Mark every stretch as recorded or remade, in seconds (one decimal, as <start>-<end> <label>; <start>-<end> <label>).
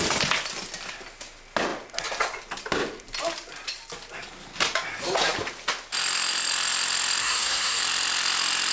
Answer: 0.0-7.2 recorded; 7.2-7.8 remade; 7.8-8.7 recorded